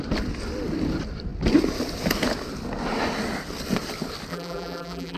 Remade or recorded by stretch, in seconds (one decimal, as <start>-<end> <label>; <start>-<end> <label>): 0.0-4.3 recorded; 4.3-5.2 remade